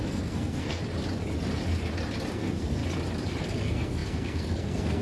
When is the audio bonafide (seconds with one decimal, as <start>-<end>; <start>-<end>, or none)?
0.8-2.3; 2.8-3.4